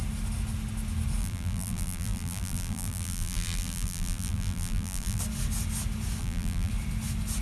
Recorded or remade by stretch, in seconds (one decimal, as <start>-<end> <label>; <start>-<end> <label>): 0.0-1.2 recorded; 1.2-5.2 remade; 5.2-6.2 recorded; 6.2-6.7 remade; 6.7-7.4 recorded